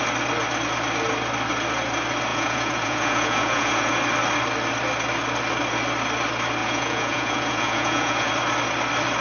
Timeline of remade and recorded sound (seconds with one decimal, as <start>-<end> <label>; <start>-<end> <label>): 0.0-2.3 recorded; 2.3-3.9 remade; 3.9-6.6 recorded; 6.6-8.3 remade; 8.3-9.2 recorded